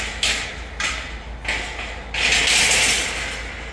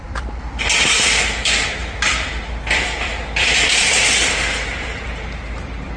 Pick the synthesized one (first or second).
second